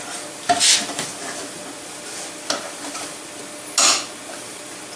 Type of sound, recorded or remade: recorded